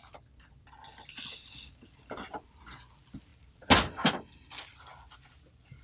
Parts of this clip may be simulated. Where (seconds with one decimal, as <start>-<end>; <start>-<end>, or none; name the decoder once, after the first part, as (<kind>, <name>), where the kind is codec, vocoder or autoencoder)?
none